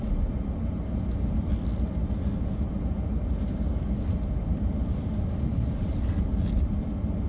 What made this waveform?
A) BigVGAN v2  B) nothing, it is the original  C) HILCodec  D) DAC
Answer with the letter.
B